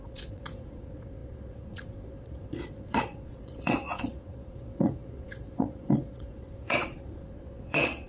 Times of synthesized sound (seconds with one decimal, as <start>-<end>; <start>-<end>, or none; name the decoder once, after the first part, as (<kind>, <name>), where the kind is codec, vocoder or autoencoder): 0.0-8.1 (vocoder, Vocos)